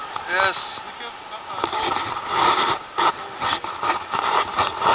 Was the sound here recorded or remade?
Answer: recorded